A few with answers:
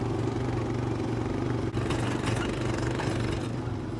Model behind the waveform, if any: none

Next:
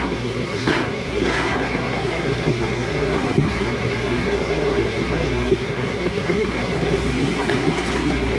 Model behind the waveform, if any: codec, SNAC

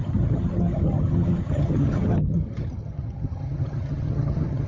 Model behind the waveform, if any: vocoder, HiFi-GAN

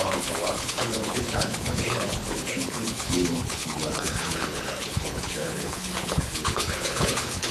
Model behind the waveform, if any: codec, HILCodec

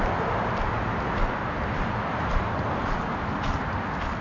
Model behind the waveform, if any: none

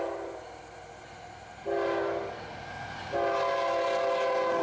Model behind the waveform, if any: none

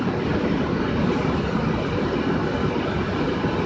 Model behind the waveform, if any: none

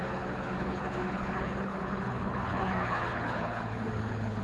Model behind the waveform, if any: codec, HILCodec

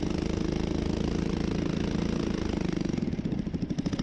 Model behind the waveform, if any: none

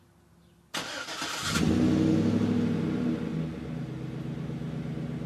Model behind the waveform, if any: none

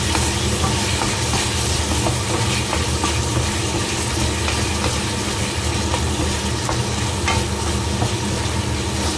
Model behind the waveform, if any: none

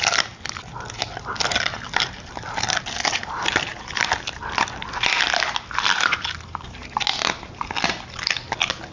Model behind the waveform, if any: none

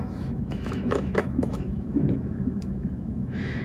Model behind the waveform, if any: autoencoder, DAC-VAE